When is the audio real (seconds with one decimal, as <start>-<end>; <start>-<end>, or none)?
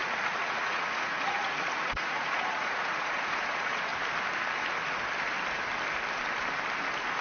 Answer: 3.9-7.2